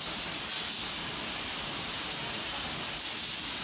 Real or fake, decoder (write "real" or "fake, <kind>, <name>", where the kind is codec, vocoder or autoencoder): real